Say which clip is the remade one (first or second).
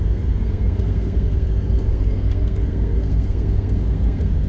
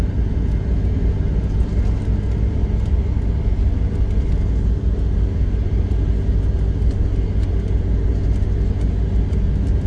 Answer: first